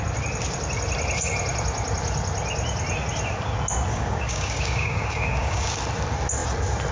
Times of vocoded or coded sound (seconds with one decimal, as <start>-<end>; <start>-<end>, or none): 3.9-5.8

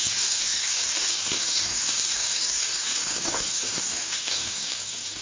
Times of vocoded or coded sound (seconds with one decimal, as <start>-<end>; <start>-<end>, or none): 0.0-5.2

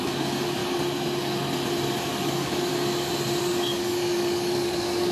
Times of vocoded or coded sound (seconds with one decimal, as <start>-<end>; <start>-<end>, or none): 0.0-0.6; 2.1-2.7; 3.4-5.1

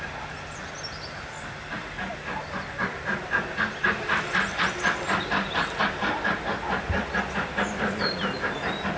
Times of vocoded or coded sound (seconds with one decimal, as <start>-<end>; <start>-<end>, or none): none

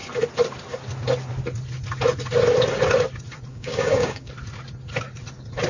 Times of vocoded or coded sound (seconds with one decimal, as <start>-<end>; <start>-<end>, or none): 3.5-4.3

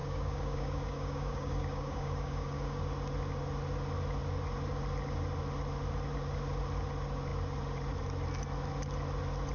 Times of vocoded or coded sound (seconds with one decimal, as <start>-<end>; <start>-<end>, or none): 0.0-2.8